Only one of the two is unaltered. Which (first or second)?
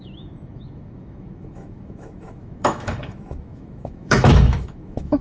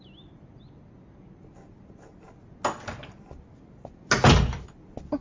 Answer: second